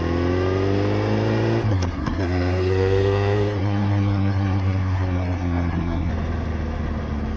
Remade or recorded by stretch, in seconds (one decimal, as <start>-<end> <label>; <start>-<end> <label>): 0.0-1.7 recorded; 1.7-6.1 remade; 6.1-7.4 recorded